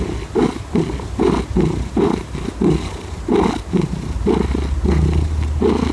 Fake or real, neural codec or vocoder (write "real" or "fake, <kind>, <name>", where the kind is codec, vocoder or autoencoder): real